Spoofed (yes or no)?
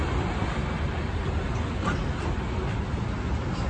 no